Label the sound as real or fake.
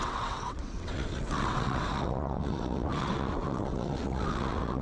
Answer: fake